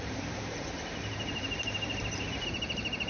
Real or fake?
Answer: fake